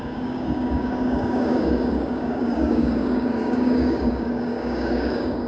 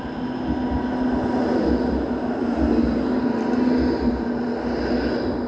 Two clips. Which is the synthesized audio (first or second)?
first